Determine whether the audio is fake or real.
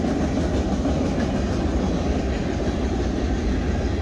real